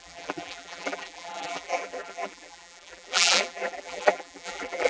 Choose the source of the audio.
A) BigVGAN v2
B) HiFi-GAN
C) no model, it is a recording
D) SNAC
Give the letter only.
A